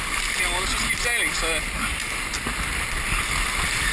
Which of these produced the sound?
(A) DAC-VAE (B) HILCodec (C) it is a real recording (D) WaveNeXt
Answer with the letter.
C